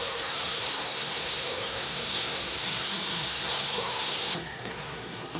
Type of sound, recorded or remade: remade